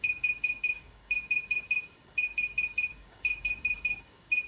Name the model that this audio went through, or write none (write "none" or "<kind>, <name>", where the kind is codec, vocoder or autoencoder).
codec, DAC